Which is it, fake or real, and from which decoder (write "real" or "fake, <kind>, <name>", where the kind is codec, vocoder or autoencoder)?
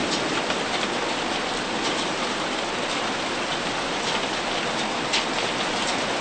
real